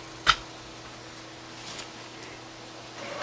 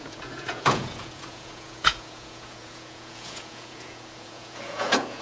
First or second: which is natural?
first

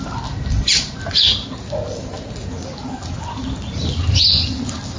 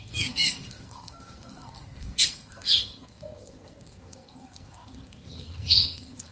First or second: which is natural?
first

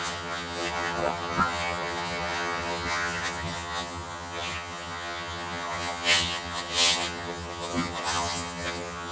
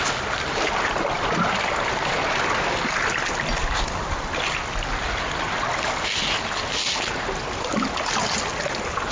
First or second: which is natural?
second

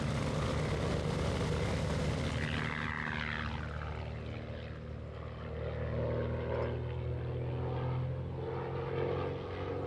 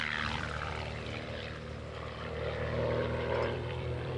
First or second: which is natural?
first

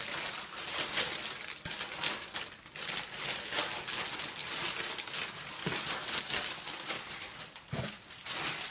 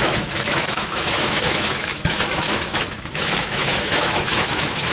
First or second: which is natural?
first